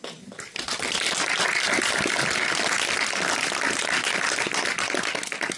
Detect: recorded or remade recorded